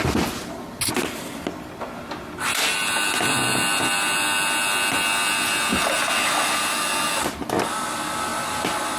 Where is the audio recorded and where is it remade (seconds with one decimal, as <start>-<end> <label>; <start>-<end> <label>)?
0.0-9.0 recorded